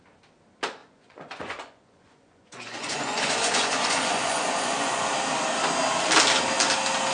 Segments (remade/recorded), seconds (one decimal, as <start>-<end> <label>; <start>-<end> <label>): 0.0-0.8 recorded; 0.8-5.1 remade; 5.1-7.1 recorded